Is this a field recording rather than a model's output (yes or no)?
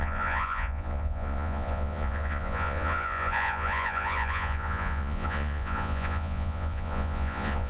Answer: no